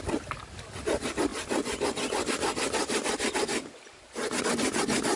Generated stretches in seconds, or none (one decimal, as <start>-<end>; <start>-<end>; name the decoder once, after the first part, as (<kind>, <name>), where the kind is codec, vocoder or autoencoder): none